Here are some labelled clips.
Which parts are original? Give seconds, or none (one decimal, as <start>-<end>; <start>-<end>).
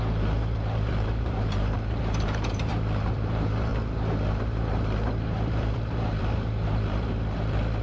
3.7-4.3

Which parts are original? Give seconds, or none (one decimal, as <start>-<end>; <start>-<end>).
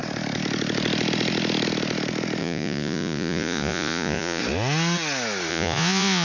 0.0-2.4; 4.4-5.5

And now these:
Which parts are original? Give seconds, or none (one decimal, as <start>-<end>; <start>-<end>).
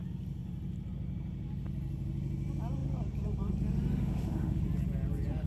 0.0-4.0; 4.6-5.5